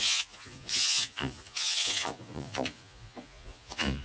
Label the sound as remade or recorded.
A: remade